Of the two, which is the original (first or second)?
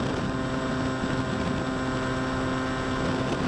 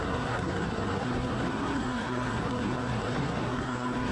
first